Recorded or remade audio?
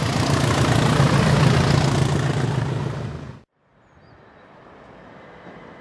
recorded